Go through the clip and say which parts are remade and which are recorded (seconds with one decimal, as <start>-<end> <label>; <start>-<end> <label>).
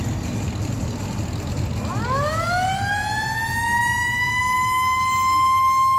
0.0-6.0 recorded